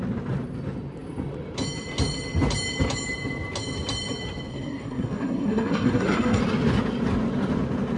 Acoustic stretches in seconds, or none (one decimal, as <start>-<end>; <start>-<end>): 0.0-4.5; 6.4-8.0